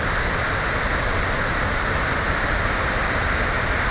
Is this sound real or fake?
real